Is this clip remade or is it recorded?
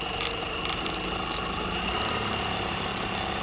remade